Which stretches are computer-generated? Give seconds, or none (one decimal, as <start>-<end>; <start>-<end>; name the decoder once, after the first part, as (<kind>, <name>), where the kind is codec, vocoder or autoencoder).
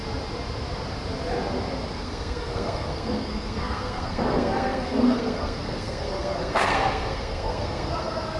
1.8-8.4 (codec, SNAC)